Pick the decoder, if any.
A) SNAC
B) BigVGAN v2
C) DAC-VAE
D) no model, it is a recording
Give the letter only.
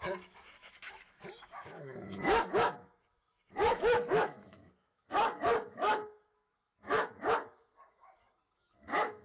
C